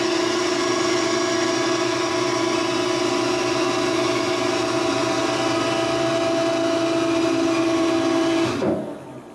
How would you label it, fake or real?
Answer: real